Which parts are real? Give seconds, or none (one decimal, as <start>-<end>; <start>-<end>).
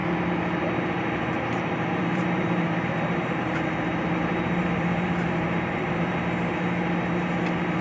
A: 0.0-2.0; 6.1-7.8